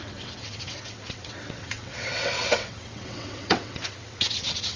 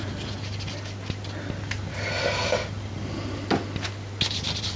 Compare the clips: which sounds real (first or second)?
second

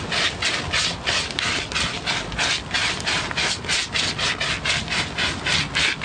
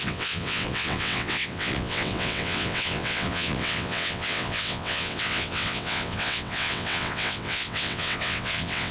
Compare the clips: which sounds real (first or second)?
first